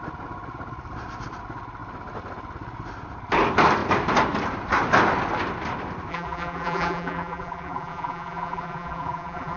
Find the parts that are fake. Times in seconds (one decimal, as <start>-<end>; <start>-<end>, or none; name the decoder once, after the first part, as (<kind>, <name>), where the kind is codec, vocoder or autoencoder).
6.1-9.6 (vocoder, BigVGAN v2)